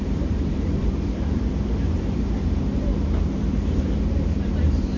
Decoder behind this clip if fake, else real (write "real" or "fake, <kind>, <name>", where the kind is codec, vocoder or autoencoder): fake, vocoder, BigVGAN v2